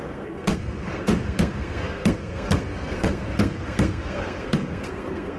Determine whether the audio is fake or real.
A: fake